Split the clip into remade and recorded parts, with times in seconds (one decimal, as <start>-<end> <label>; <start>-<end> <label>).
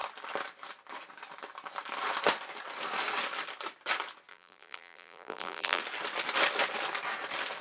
0.0-4.3 recorded; 4.3-5.8 remade; 5.8-7.6 recorded